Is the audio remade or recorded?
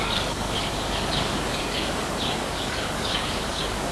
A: remade